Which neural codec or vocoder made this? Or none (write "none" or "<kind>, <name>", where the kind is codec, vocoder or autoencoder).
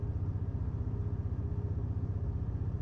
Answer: none